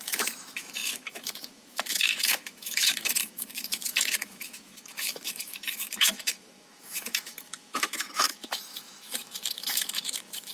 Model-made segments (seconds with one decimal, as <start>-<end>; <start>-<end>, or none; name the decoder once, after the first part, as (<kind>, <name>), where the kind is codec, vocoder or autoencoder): 0.0-10.5 (autoencoder, DAC-VAE)